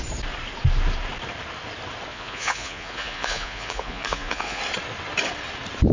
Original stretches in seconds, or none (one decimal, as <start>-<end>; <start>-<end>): 0.0-2.1; 4.6-5.9